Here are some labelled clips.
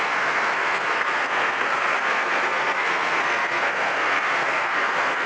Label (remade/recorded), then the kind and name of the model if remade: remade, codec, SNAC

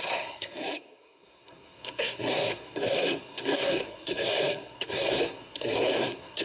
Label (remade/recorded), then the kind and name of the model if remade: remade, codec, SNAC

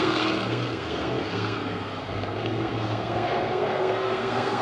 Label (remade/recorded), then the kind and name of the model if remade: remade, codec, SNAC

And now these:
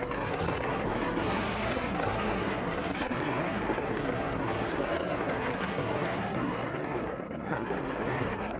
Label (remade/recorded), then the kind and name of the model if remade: remade, codec, SNAC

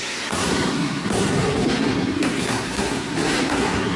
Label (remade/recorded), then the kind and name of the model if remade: remade, codec, SNAC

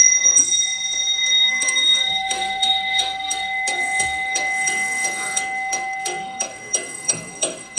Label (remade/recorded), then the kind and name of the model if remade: remade, codec, SNAC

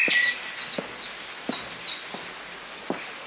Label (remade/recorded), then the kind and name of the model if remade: recorded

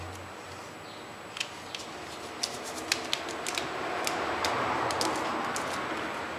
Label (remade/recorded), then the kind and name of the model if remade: recorded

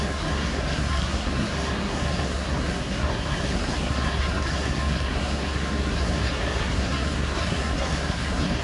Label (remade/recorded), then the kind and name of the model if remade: remade, codec, SNAC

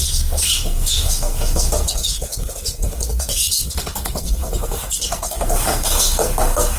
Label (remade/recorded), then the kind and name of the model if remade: remade, codec, SNAC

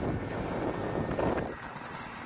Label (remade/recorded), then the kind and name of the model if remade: recorded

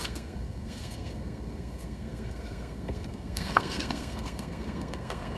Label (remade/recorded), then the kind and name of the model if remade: remade, codec, SNAC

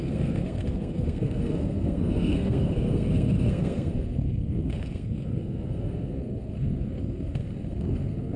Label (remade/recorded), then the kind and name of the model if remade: remade, codec, SNAC